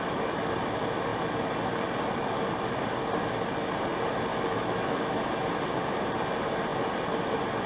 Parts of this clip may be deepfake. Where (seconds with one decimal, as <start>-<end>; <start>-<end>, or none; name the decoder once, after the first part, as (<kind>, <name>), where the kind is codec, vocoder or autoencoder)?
4.3-5.3 (autoencoder, DAC-VAE)